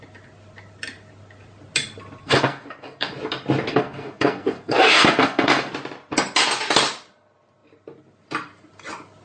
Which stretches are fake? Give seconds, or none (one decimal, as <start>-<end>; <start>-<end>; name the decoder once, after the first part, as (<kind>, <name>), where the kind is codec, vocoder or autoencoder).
2.2-3.1 (codec, SNAC); 3.7-5.7